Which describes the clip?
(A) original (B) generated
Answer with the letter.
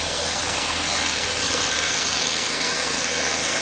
B